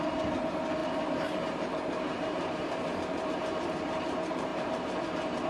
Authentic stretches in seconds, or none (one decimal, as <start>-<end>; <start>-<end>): none